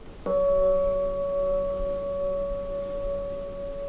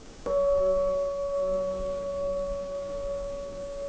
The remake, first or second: second